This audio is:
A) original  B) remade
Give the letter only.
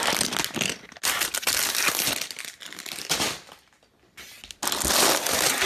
A